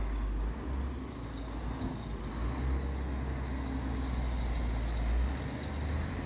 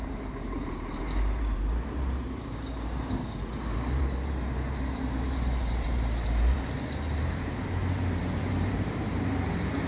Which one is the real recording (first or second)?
first